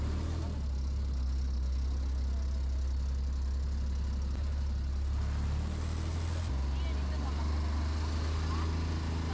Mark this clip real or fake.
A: real